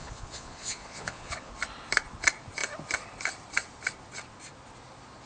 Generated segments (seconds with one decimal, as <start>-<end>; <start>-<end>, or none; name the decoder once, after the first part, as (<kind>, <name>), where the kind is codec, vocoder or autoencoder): 0.0-1.5 (vocoder, Vocos)